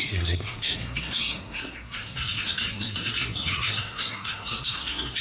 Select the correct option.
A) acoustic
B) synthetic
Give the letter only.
B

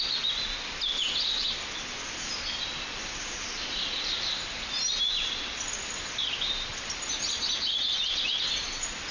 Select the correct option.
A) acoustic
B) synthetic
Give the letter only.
A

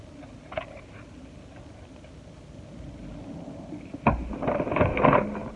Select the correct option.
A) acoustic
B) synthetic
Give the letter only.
A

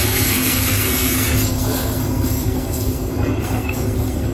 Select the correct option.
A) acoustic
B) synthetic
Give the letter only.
B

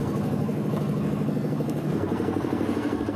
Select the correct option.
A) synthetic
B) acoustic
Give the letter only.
A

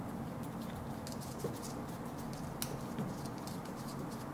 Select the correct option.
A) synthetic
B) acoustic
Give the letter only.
B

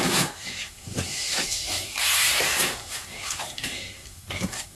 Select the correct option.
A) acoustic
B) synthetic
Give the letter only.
B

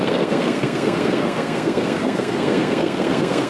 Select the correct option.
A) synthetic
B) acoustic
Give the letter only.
A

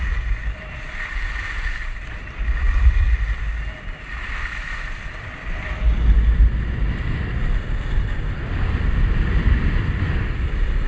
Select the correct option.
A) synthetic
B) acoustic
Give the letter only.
B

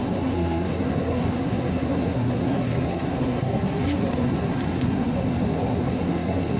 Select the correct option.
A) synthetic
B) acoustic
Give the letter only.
A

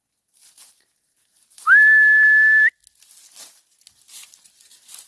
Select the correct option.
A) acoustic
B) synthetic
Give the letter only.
A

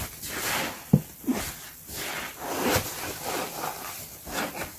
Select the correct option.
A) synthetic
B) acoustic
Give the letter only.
B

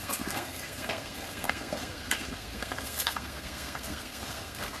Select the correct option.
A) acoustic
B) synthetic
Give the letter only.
B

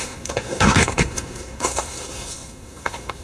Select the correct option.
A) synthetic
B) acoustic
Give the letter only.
A